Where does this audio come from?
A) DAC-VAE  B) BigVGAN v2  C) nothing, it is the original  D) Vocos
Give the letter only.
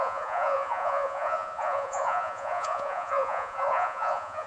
D